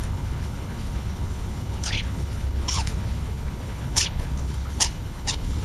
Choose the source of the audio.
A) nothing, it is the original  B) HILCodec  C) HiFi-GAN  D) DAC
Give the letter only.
B